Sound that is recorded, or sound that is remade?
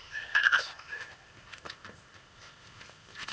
remade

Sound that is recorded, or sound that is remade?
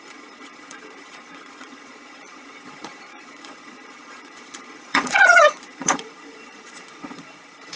remade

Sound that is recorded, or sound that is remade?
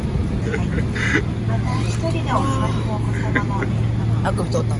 recorded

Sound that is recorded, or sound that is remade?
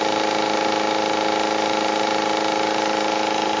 recorded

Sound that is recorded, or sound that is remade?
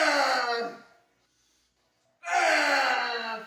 recorded